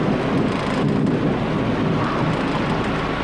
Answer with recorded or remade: recorded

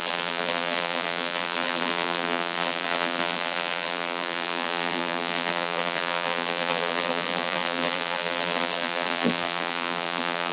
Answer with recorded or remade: remade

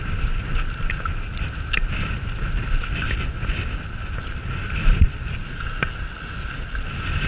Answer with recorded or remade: recorded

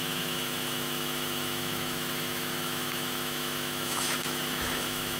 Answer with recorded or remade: remade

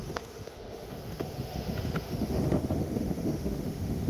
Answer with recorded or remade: remade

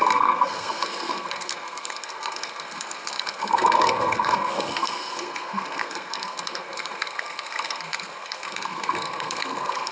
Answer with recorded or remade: remade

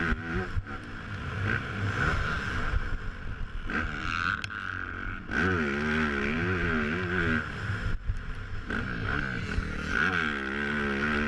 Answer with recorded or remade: recorded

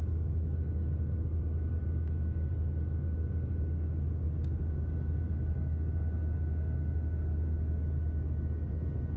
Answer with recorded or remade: recorded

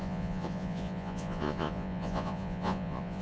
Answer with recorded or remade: remade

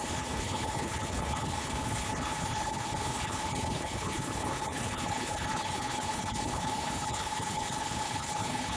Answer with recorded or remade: remade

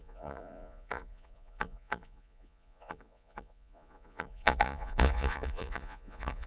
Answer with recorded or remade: remade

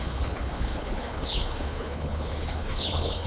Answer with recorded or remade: remade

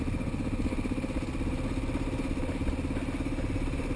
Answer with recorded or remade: recorded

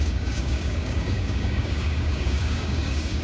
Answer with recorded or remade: remade